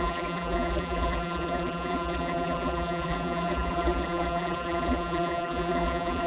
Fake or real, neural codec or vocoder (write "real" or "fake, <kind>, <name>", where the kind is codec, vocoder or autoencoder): fake, vocoder, BigVGAN v2